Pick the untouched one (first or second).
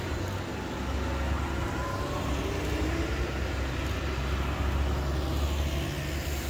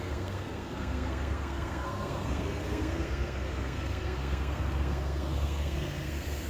first